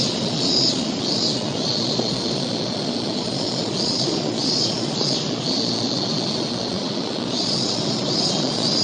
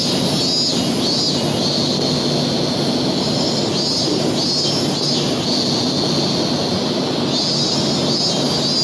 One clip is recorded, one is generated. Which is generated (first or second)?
first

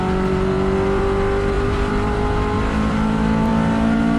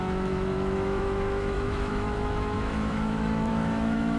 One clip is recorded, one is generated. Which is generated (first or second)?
second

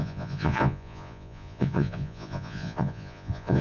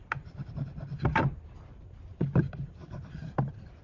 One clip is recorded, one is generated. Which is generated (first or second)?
first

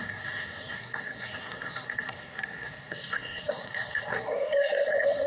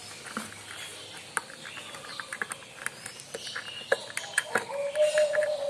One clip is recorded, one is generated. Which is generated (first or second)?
first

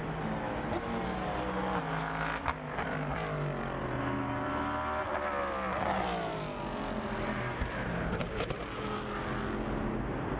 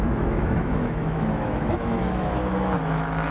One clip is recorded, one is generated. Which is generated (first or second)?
second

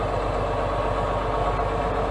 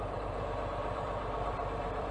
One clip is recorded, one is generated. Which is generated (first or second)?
second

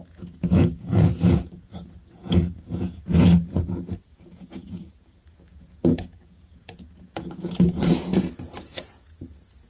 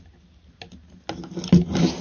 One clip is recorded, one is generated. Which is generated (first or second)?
first